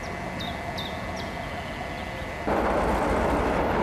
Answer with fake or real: real